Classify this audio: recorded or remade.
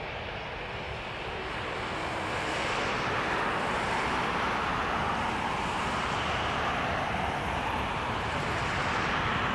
recorded